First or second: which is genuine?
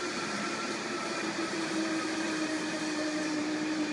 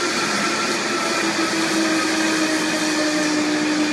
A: second